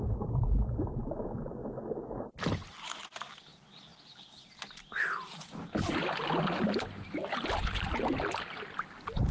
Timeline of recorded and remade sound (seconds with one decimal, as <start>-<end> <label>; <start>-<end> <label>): 0.0-1.6 remade; 1.6-2.9 recorded; 2.9-3.9 remade; 3.9-9.3 recorded